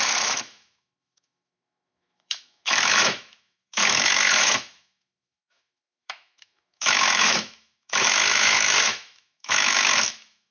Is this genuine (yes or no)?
no